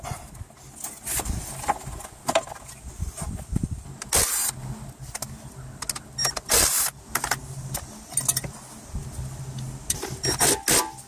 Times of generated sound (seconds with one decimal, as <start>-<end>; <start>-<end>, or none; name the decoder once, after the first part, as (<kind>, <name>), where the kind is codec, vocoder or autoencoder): none